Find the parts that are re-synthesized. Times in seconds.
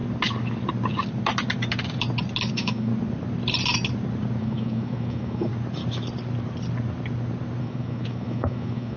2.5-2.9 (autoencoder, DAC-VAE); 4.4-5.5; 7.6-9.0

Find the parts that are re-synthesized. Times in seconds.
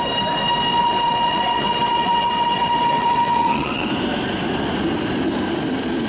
0.8-3.9 (vocoder, WaveNeXt)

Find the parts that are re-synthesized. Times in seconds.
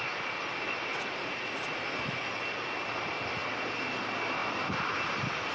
0.9-1.8 (vocoder, Vocos)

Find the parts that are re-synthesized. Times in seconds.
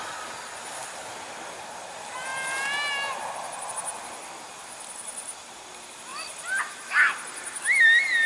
none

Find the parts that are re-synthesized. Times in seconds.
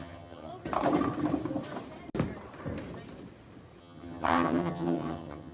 0.0-0.5 (vocoder, HiFi-GAN); 3.8-5.5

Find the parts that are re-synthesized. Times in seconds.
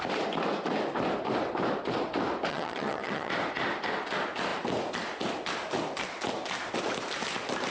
2.5-3.3 (vocoder, HiFi-GAN)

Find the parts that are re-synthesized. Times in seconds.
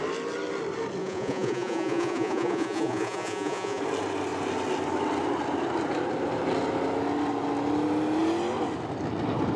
1.0-3.8 (vocoder, Vocos)